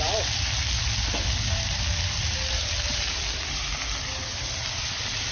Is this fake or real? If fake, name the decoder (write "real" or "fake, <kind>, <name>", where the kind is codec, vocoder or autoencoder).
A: real